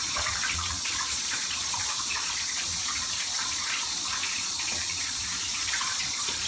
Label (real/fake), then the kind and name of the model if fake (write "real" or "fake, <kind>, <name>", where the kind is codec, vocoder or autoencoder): fake, vocoder, Vocos